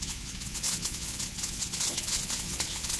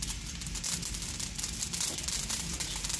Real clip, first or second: second